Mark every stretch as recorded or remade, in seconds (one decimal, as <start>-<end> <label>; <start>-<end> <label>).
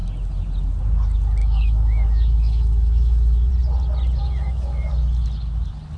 0.0-1.4 recorded; 1.4-3.5 remade; 3.5-4.2 recorded; 4.2-4.9 remade; 4.9-6.0 recorded